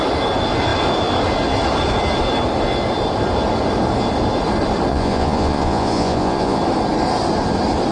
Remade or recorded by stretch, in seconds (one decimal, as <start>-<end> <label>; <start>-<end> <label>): 0.0-4.9 recorded; 4.9-6.6 remade; 6.6-7.9 recorded